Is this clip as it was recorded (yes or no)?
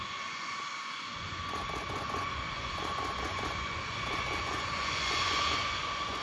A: no